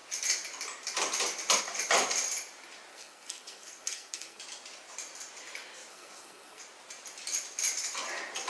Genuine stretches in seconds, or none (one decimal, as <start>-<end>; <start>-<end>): 0.0-2.9; 4.4-5.9; 6.6-8.5